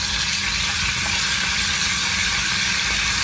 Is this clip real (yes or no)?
yes